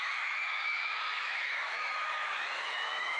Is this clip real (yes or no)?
no